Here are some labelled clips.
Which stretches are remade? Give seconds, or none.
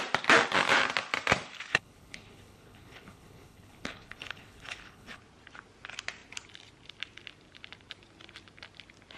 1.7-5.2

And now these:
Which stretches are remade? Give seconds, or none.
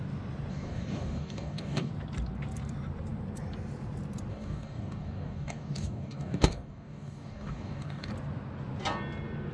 0.5-1.9; 4.3-8.1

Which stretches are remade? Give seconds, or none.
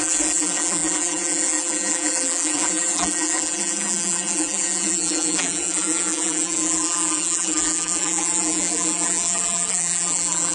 0.0-10.5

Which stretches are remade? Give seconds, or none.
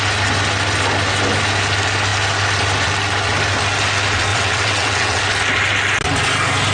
4.3-5.2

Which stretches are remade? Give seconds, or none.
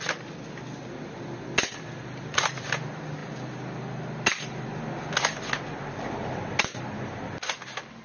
3.2-4.8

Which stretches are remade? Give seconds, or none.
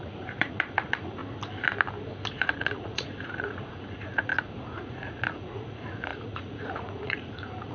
0.0-1.2; 2.4-7.7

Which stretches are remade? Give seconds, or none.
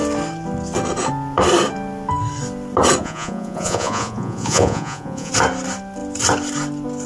3.0-5.3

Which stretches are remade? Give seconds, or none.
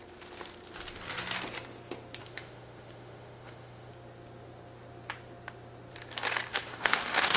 2.2-3.9; 6.5-7.4